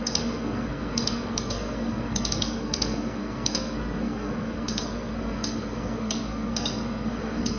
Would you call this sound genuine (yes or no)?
no